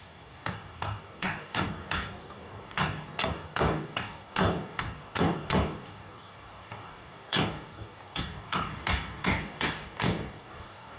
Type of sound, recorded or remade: remade